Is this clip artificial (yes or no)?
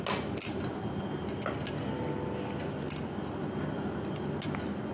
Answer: no